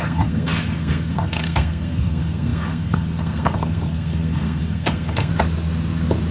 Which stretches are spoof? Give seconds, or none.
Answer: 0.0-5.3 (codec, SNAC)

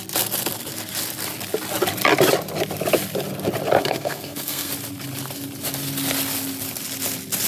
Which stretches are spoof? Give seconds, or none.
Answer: 3.8-4.7 (codec, SNAC)

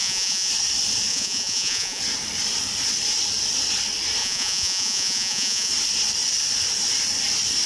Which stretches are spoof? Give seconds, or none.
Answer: 0.0-0.5 (vocoder, Vocos); 1.1-2.0; 4.2-5.7

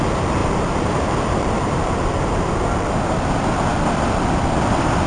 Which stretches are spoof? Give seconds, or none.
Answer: 0.4-3.3 (vocoder, BigVGAN v2)

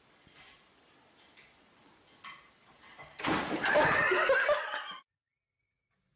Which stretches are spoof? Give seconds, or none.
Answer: 2.6-3.7 (vocoder, BigVGAN v2)

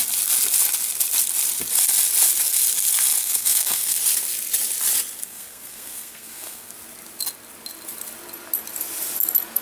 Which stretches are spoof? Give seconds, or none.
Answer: 3.2-4.0 (codec, SNAC); 5.2-6.7